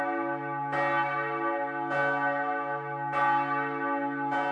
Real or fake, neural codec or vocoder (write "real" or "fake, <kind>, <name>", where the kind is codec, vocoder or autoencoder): real